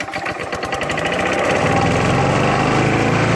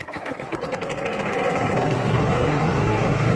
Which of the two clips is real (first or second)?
first